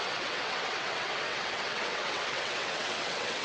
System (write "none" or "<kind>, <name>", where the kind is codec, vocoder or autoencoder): vocoder, WaveNeXt